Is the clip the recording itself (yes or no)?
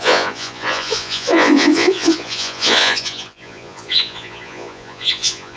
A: no